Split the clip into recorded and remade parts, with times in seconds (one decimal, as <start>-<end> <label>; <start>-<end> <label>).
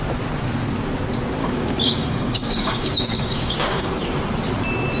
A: 0.0-1.4 recorded; 1.4-3.9 remade; 3.9-5.0 recorded